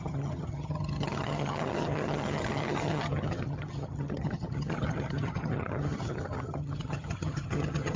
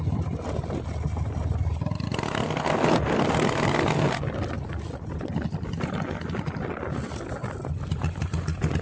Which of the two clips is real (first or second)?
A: second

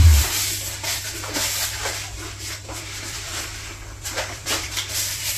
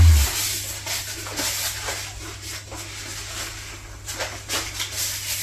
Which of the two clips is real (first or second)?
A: second